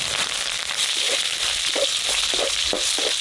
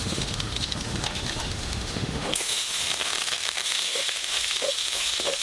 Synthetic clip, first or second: second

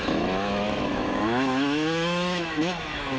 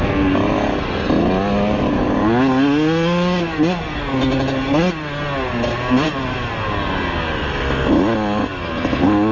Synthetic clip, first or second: first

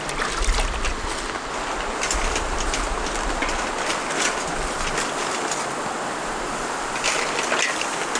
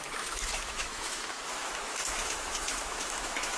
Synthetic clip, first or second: second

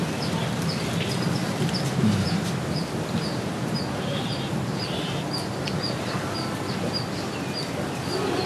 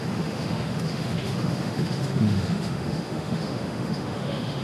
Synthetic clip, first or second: second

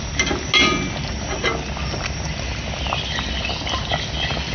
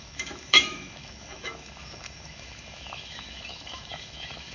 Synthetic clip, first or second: second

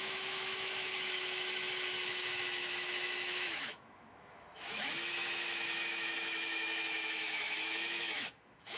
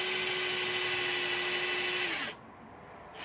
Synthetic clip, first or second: first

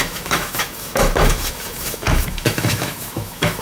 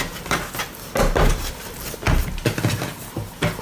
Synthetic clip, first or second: first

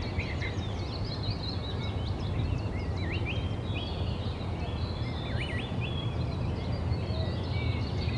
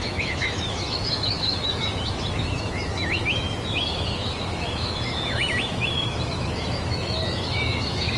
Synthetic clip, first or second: second